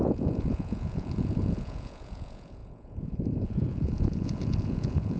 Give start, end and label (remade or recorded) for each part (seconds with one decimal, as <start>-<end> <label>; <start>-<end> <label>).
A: 0.0-5.2 remade